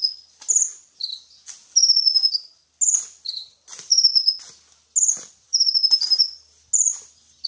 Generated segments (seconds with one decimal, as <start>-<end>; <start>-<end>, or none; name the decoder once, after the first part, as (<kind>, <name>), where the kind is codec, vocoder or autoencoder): none